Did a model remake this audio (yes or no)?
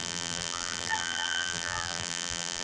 yes